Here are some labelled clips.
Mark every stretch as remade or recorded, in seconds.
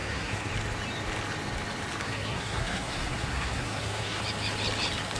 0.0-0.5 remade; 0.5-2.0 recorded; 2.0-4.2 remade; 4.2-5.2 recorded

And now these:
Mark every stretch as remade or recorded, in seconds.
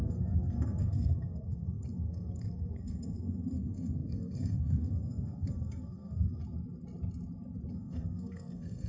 0.0-6.4 remade; 6.4-7.7 recorded; 7.7-8.9 remade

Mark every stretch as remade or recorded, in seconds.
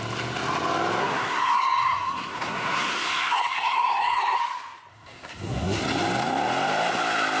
0.0-1.0 recorded; 1.0-4.4 remade; 4.4-4.9 recorded; 4.9-5.8 remade; 5.8-7.4 recorded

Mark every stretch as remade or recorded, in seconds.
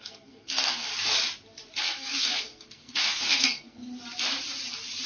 0.0-0.9 remade; 0.9-1.8 recorded; 1.8-3.8 remade; 3.8-5.1 recorded